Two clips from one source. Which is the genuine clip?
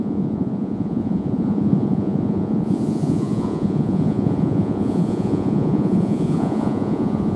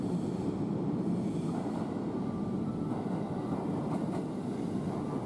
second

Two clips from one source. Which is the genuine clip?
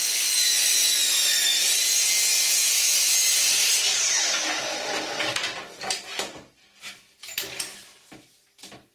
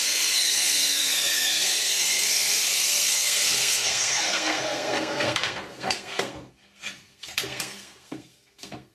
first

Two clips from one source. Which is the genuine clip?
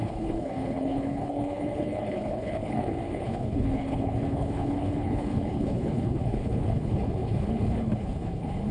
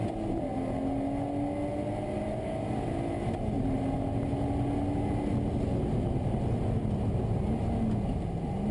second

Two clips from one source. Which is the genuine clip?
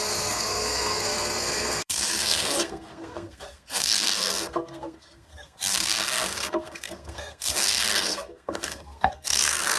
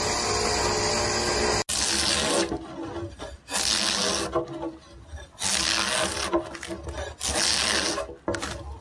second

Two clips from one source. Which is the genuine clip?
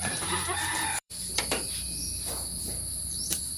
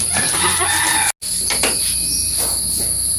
second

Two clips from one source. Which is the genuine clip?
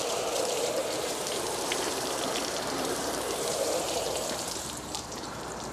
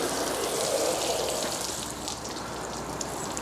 second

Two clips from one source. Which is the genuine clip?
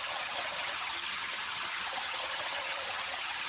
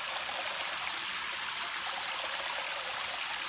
second